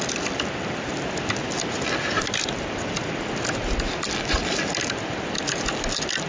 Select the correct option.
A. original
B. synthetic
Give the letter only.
A